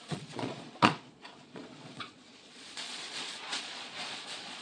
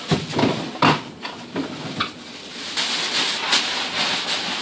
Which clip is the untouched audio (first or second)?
second